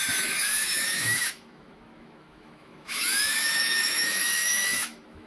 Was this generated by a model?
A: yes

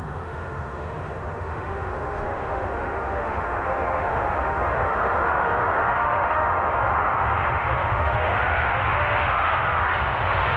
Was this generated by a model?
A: yes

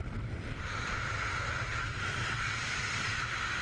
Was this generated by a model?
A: yes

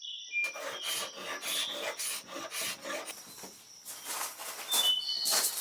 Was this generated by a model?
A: no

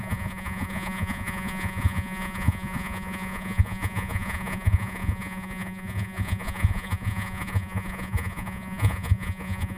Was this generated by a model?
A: yes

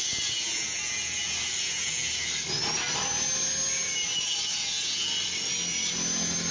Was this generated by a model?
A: no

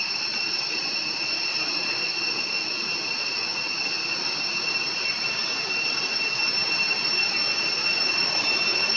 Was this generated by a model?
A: no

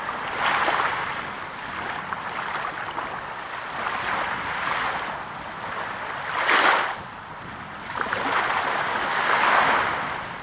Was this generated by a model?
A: no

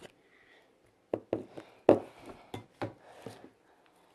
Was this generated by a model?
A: no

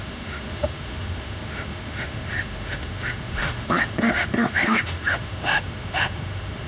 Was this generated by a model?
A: yes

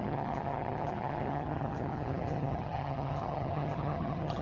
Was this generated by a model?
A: yes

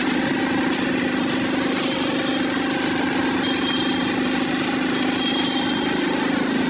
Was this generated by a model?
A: no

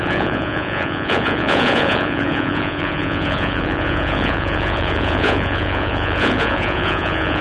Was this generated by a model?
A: yes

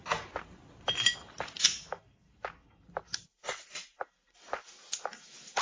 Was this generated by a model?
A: no